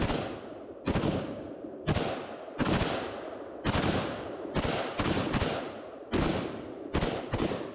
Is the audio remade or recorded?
recorded